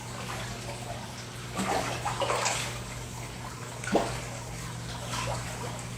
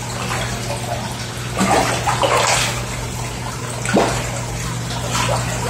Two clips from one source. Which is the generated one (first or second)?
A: first